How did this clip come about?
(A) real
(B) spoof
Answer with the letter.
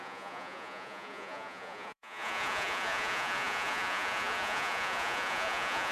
B